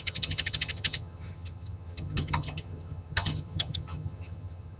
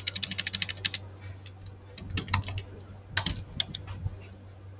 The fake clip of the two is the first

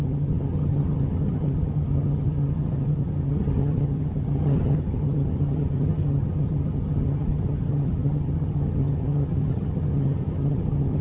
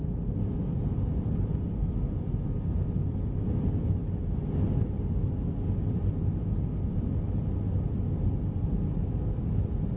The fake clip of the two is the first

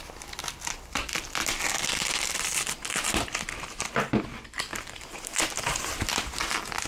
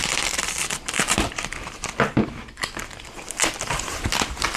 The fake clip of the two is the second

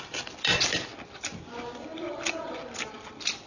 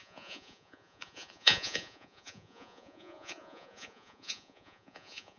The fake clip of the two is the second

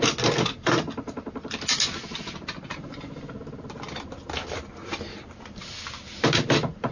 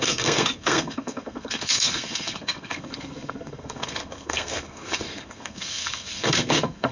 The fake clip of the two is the second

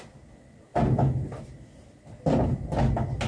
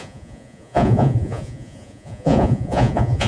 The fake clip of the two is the second